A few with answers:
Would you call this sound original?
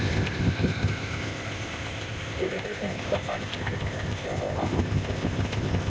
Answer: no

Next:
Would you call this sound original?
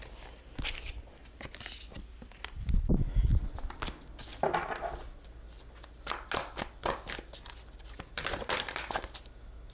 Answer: yes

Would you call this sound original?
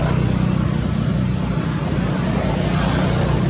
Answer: yes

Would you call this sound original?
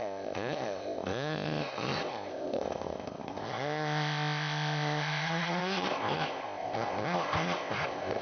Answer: no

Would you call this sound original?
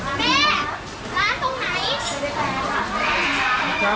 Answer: yes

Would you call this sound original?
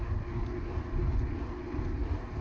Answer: yes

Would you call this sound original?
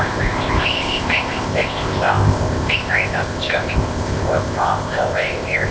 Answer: no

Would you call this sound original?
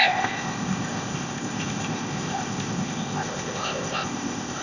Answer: no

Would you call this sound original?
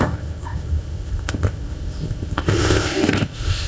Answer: no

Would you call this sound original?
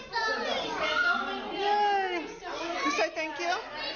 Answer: yes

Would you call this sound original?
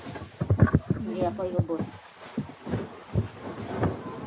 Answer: yes